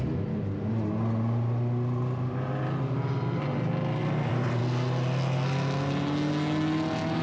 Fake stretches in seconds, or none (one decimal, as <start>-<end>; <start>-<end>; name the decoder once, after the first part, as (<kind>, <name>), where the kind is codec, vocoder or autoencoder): 4.0-4.6 (vocoder, BigVGAN v2)